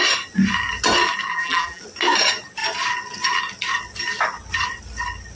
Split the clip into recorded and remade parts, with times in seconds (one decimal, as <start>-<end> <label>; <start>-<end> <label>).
0.0-1.3 recorded; 1.3-1.8 remade; 1.8-5.4 recorded